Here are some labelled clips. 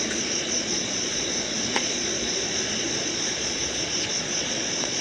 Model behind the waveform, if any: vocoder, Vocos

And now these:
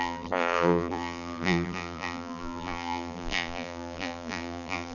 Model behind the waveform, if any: vocoder, BigVGAN v2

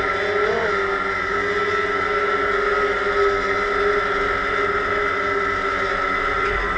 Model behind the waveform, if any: none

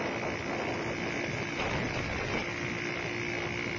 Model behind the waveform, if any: none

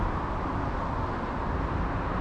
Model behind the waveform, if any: none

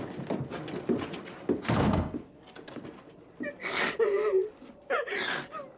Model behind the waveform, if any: none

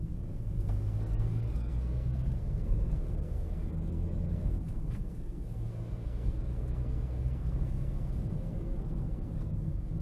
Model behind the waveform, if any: codec, SNAC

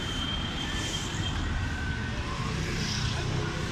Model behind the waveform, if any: vocoder, BigVGAN v2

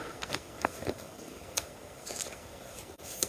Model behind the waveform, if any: codec, SNAC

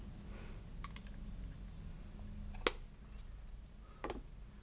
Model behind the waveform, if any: none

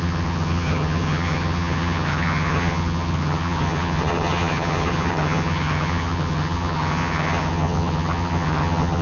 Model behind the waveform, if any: vocoder, HiFi-GAN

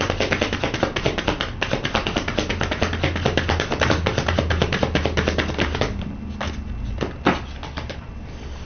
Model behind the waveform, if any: none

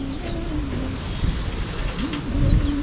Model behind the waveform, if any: none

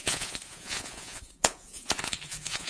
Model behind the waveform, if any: vocoder, Vocos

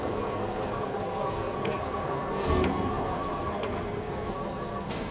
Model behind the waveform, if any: codec, SNAC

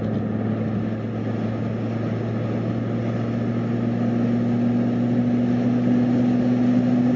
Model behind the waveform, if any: none